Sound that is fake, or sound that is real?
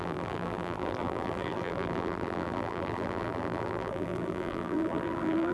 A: fake